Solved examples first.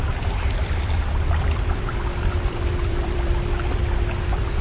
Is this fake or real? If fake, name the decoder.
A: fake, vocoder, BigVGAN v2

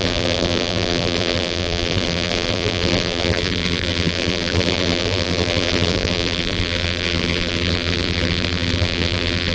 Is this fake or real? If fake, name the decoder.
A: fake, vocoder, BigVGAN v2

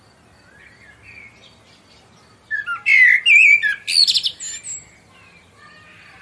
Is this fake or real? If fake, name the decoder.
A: real